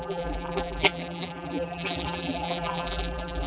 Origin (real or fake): fake